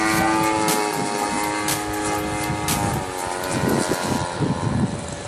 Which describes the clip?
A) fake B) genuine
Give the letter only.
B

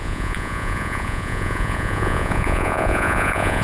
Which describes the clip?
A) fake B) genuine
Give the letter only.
A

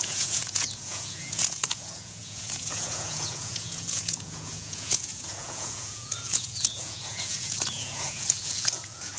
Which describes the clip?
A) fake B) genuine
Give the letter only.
A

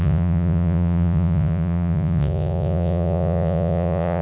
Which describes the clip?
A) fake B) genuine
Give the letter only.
A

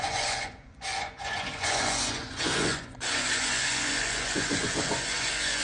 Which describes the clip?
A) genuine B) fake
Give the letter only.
B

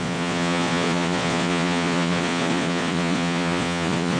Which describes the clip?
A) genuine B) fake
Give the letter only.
B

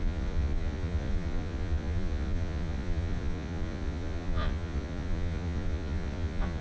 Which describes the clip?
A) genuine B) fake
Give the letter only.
B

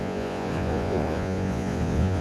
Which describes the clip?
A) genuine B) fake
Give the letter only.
B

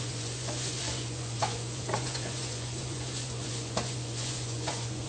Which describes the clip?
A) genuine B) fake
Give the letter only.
B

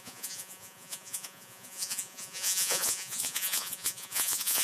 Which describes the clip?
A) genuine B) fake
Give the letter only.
B